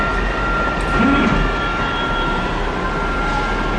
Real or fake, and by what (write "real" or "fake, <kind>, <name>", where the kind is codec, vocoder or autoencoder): real